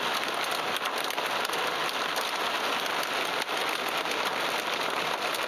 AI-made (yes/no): no